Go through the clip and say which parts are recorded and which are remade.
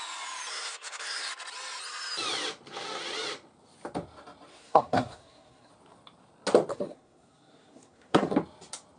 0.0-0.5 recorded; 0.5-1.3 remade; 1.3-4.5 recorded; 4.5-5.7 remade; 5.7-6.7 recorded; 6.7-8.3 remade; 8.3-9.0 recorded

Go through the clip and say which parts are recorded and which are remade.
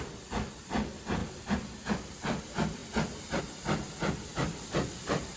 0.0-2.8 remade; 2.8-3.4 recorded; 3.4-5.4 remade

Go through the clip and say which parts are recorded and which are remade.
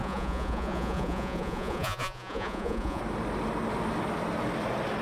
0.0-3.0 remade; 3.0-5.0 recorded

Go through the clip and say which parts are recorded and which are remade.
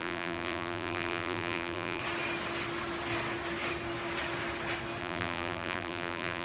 0.0-2.0 remade; 2.0-5.0 recorded; 5.0-6.4 remade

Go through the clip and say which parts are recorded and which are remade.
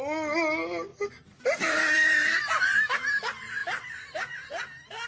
0.0-0.9 recorded; 0.9-3.1 remade; 3.1-3.6 recorded; 3.6-4.5 remade; 4.5-5.1 recorded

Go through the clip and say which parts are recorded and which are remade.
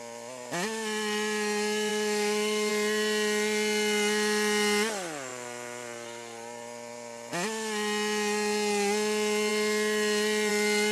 0.0-1.9 recorded; 1.9-2.7 remade; 2.7-10.9 recorded